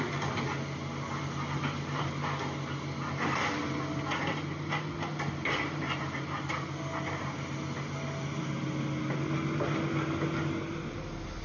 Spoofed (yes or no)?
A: no